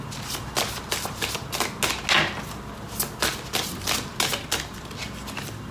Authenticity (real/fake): real